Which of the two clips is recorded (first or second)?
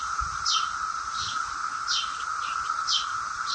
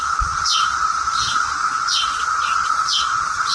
first